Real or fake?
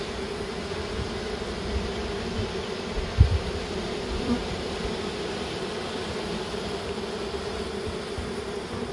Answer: fake